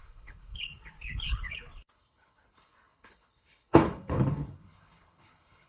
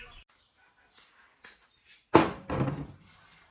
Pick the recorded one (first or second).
second